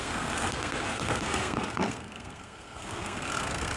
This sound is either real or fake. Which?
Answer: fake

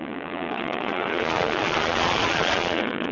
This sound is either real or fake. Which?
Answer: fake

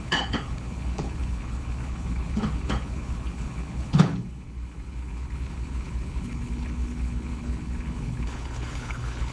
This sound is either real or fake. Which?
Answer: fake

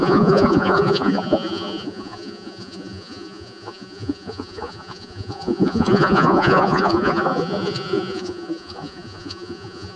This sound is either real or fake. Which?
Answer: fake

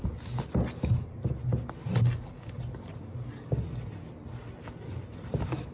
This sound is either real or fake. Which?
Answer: real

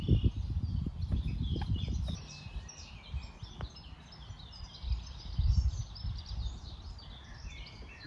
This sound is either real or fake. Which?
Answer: real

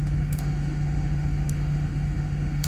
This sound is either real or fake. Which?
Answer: fake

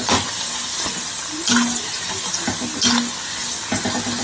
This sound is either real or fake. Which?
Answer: real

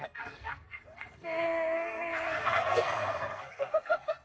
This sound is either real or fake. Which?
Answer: fake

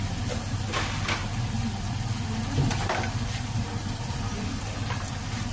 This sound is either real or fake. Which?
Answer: fake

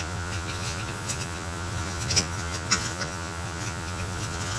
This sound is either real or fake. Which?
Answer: fake